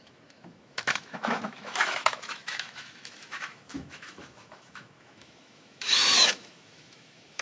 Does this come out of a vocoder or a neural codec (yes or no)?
yes